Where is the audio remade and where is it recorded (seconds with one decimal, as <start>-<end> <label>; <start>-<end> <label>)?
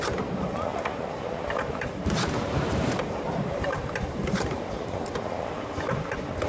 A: 0.0-0.7 recorded; 0.7-4.6 remade; 4.6-6.5 recorded